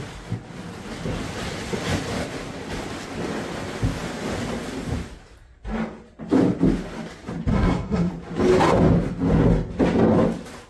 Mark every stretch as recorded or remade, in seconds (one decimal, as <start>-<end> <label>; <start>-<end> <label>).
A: 0.0-7.5 recorded; 7.5-8.1 remade; 8.1-10.7 recorded